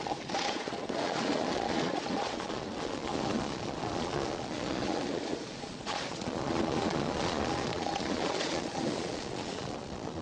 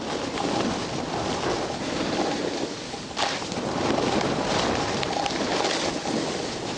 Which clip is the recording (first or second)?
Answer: second